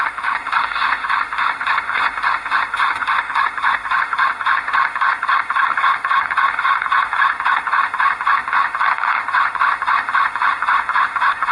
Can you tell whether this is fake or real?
fake